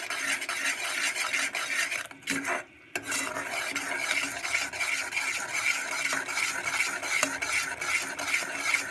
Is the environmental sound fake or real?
real